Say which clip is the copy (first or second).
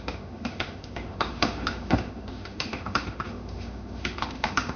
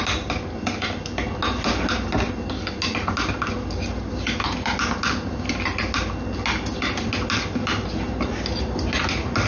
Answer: first